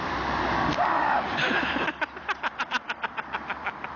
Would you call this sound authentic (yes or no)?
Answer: no